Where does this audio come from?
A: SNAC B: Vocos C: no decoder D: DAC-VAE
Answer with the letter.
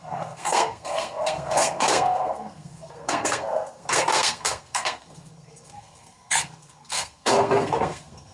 A